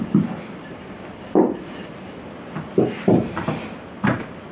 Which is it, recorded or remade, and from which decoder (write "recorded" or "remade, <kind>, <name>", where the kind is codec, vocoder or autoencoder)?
recorded